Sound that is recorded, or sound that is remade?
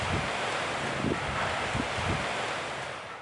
recorded